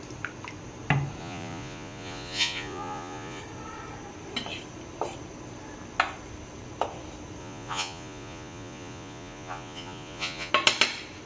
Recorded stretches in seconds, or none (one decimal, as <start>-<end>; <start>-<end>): 0.0-1.2; 3.4-7.4; 10.5-11.3